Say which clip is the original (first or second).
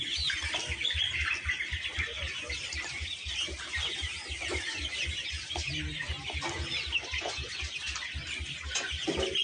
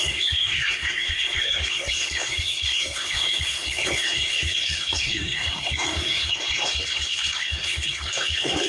first